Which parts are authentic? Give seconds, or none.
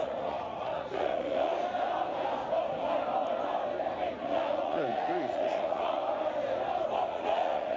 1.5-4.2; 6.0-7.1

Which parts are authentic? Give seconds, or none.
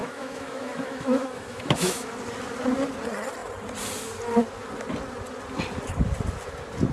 2.1-6.9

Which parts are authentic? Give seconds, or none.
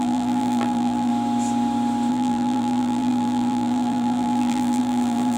1.1-2.1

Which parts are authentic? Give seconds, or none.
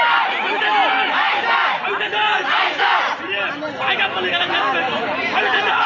0.0-5.9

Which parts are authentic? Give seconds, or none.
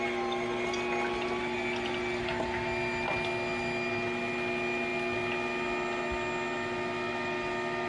0.0-7.9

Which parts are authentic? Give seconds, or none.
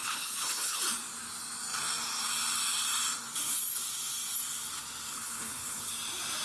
0.8-5.1; 5.9-6.4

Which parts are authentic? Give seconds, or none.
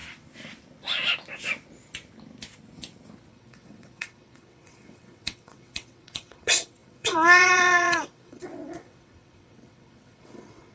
0.0-3.3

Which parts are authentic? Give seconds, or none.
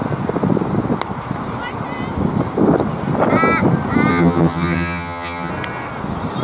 0.0-4.1; 5.5-6.4